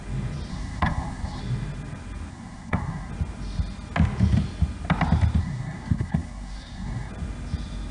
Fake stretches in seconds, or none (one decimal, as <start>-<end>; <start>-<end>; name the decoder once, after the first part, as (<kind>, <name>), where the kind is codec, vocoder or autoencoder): 0.5-1.4 (codec, SNAC); 2.3-3.1; 5.4-7.1